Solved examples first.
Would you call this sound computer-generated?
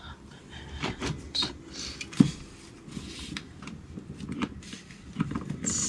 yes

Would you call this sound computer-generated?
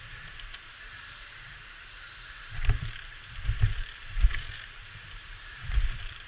yes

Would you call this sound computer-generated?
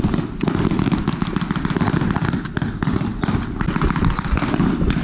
no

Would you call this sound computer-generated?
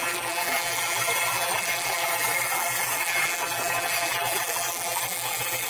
yes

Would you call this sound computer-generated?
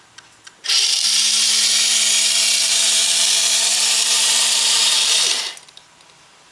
yes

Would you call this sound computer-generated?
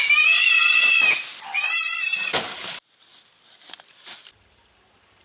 no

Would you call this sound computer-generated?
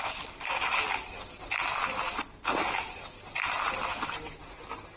no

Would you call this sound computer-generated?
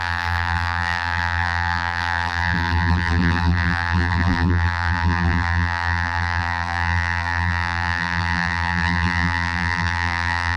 yes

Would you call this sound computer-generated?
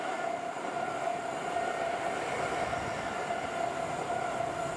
no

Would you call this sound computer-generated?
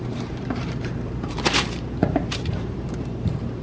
yes